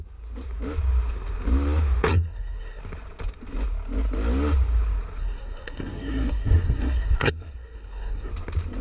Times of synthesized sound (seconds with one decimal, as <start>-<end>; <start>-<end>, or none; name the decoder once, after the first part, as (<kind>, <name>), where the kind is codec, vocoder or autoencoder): 2.1-2.8 (codec, SNAC); 5.2-8.3